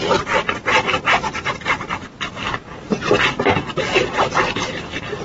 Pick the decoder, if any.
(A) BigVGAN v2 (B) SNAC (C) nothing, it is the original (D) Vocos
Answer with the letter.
C